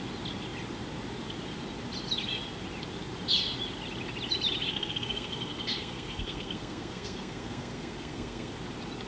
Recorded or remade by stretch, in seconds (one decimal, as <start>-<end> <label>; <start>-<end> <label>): 0.0-4.7 recorded; 4.7-8.5 remade; 8.5-9.1 recorded